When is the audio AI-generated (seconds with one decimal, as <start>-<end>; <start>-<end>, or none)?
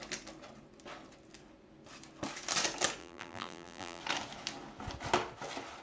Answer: 3.0-4.0